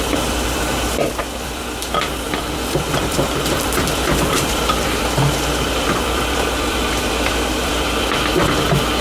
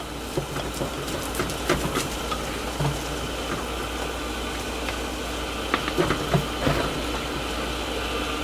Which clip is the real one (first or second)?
second